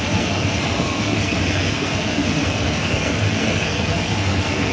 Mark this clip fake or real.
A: fake